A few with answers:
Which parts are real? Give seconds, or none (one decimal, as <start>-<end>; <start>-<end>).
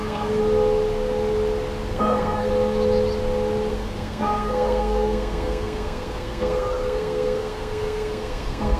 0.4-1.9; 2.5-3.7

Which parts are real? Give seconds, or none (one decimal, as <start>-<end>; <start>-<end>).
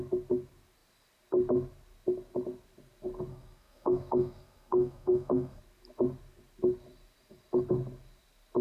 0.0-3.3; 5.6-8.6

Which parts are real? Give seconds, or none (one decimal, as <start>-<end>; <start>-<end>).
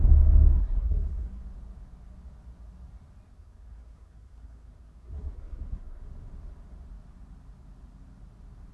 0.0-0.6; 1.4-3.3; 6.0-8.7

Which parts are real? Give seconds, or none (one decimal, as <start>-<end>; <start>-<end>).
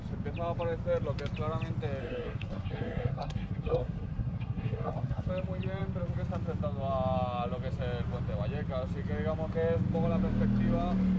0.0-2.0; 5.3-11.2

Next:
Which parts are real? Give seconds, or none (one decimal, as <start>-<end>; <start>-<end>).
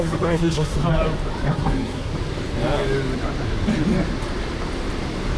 0.7-1.5; 2.1-5.4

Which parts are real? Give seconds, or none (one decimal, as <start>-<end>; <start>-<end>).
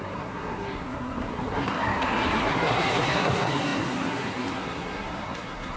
none